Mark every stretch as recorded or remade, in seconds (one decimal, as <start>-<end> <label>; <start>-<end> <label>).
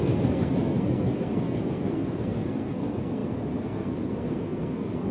0.0-5.1 remade